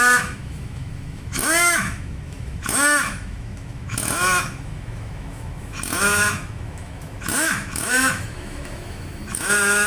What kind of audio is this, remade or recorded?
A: remade